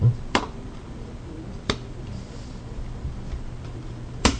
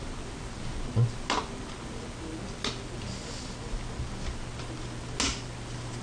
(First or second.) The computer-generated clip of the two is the first